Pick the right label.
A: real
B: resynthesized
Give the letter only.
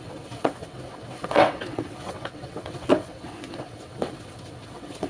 B